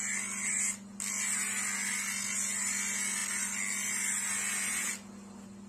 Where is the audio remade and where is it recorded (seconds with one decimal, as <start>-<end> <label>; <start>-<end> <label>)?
0.0-5.7 recorded